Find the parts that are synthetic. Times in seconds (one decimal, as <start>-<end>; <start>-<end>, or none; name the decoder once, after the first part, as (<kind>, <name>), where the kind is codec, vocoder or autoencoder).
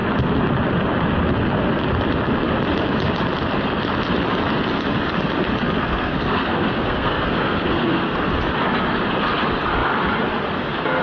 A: 5.8-8.2 (codec, SNAC)